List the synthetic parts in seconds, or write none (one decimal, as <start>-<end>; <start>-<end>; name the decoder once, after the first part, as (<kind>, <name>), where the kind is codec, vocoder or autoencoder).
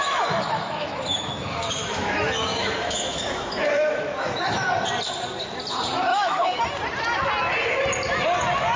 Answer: 0.0-4.7 (autoencoder, DAC-VAE); 6.1-6.6